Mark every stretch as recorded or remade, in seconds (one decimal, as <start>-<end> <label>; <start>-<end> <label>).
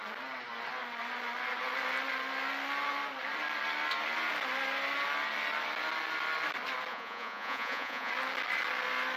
0.0-6.9 recorded; 6.9-8.1 remade; 8.1-9.2 recorded